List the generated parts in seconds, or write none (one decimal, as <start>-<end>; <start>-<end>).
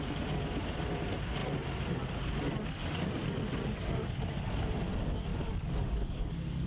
5.3-6.7